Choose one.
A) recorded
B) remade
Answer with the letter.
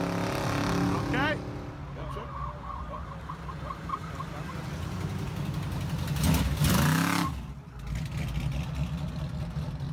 A